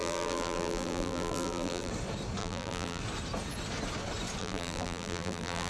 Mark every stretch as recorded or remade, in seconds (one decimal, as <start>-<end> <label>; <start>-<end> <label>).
0.0-1.9 remade; 1.9-2.4 recorded; 2.4-3.0 remade; 3.0-4.4 recorded; 4.4-5.7 remade